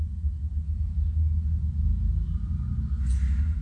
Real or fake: real